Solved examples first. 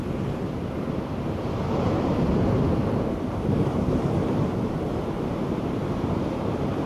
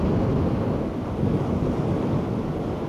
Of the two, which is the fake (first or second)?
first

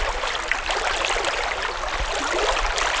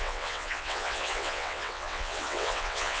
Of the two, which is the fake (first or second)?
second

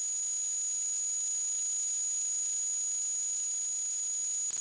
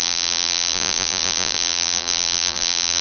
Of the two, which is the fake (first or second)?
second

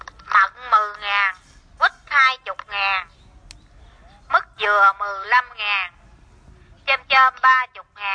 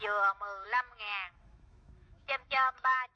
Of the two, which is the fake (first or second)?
second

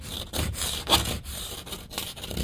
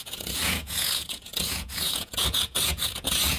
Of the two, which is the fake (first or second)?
second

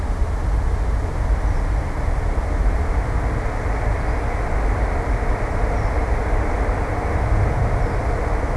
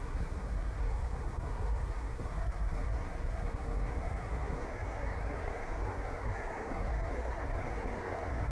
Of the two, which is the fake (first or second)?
second